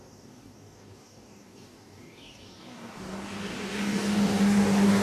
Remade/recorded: remade